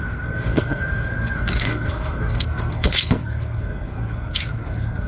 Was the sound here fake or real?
fake